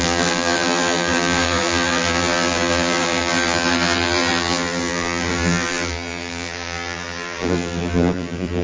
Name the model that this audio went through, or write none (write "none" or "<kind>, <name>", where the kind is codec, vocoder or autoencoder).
vocoder, BigVGAN v2